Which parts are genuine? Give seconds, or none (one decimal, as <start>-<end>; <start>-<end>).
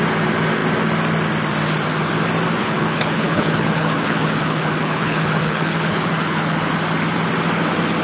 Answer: 0.0-2.6; 6.7-8.0